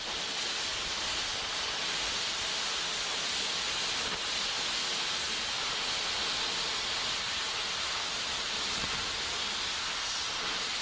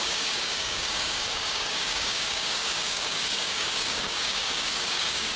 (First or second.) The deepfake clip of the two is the second